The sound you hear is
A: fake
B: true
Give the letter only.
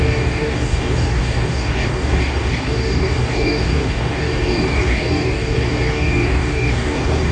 A